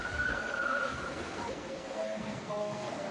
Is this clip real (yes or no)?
no